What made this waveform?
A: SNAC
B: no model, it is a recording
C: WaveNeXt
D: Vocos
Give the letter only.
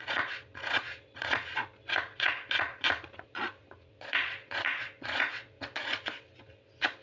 D